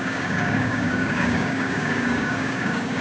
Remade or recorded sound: remade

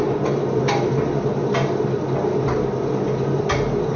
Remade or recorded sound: recorded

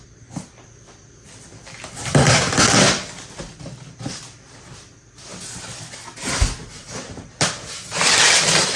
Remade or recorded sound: recorded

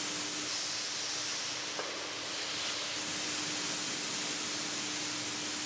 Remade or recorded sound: recorded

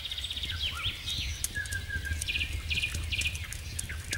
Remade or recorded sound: recorded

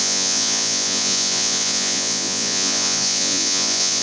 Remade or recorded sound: remade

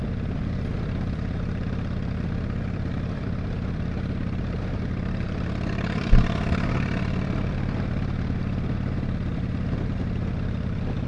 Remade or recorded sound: remade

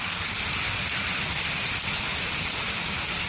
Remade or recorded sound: recorded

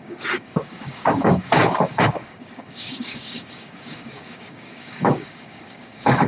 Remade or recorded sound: remade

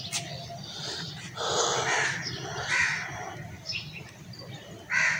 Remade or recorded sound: recorded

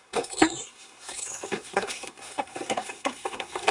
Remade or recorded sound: remade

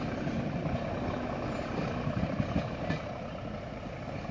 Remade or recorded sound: recorded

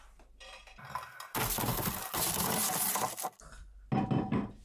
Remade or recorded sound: recorded